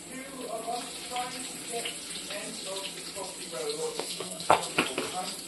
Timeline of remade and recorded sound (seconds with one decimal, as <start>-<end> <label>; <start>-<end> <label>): 0.0-3.8 recorded; 3.8-4.7 remade; 4.7-5.5 recorded